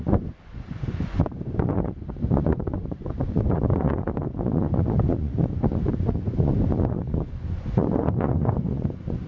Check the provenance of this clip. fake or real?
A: fake